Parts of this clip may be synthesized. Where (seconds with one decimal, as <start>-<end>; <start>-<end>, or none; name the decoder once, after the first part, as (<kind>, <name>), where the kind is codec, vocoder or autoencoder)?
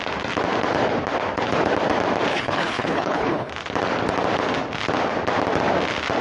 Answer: 2.3-3.5 (codec, HILCodec)